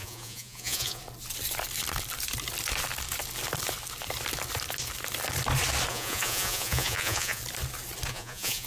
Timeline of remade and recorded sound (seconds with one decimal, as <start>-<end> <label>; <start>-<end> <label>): 0.0-1.0 remade; 1.0-5.9 recorded; 5.9-7.4 remade; 7.4-8.1 recorded; 8.1-8.7 remade